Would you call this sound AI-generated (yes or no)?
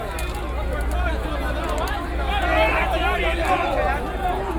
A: no